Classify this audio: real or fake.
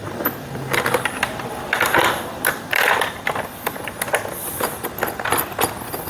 real